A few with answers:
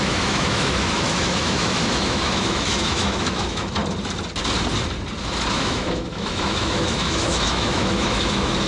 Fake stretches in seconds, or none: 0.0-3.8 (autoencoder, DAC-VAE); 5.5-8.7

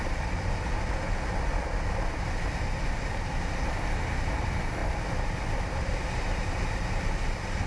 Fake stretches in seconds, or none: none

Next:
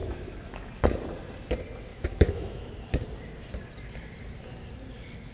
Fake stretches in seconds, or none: 0.0-0.7 (autoencoder, DAC-VAE); 1.9-2.7

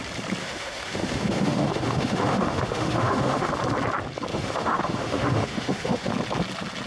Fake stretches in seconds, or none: 0.4-3.5 (autoencoder, DAC-VAE); 4.3-6.1

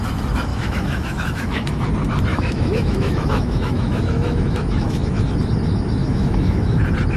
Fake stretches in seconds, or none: 0.5-1.9 (autoencoder, DAC-VAE); 2.3-5.3; 6.0-6.8